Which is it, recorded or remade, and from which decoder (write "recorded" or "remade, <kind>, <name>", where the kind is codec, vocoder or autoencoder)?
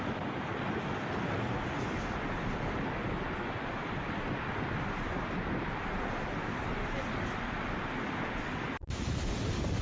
recorded